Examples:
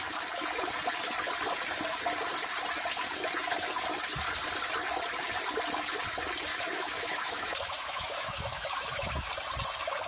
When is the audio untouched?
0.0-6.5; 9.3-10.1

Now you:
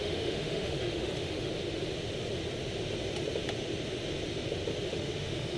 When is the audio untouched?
1.5-4.9

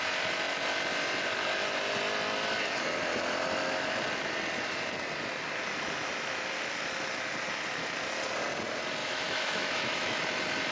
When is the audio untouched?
0.0-9.0; 10.2-10.7

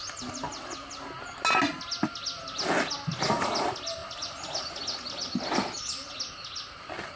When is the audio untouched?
0.0-7.2

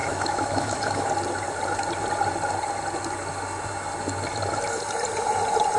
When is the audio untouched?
1.1-5.8

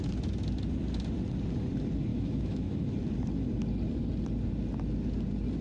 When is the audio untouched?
0.0-2.1; 2.9-5.6

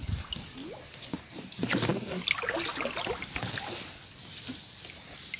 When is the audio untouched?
0.0-5.4